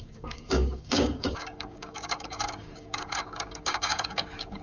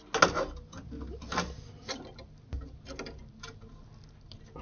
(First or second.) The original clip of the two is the second